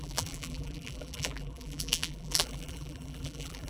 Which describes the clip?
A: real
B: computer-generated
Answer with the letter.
B